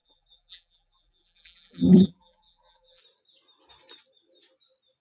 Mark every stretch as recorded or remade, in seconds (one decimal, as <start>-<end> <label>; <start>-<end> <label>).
0.0-3.0 remade; 3.0-5.0 recorded